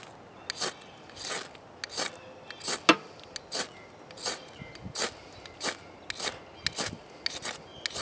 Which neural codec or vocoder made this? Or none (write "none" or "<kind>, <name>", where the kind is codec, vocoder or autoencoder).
none